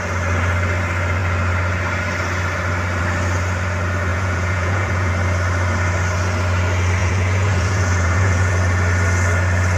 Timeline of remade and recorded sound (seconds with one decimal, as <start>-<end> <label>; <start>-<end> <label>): 0.0-4.1 recorded; 4.1-5.1 remade; 5.1-7.0 recorded; 7.0-8.5 remade; 8.5-9.8 recorded